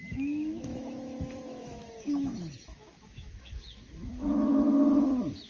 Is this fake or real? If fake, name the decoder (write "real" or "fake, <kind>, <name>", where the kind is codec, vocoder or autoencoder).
fake, autoencoder, DAC-VAE